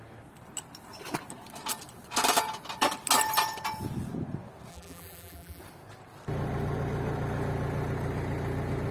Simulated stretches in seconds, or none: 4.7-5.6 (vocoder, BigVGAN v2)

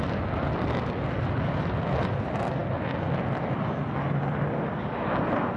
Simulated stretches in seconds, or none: none

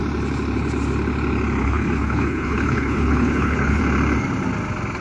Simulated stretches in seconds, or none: 1.6-3.8 (codec, HILCodec)

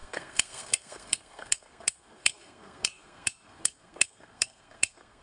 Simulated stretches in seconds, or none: 0.0-5.2 (codec, SNAC)